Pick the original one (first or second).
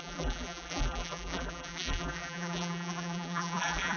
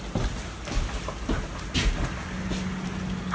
second